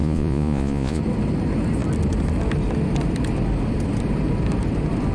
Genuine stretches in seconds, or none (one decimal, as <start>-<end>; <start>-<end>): 1.0-5.1